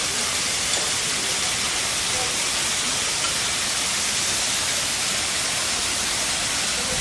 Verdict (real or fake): real